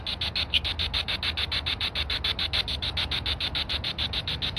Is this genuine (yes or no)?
yes